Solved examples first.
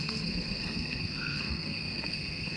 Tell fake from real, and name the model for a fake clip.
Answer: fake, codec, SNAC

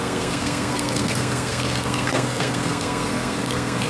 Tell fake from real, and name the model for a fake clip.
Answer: fake, codec, SNAC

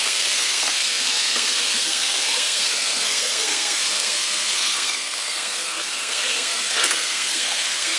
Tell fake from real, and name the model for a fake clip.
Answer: fake, codec, SNAC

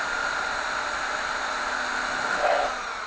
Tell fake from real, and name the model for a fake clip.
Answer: real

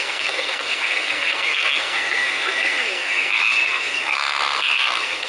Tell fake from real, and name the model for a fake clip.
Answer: fake, codec, SNAC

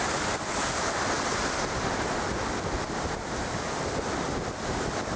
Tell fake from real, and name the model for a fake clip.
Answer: real